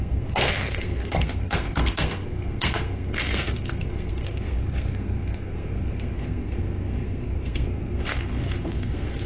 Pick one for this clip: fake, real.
fake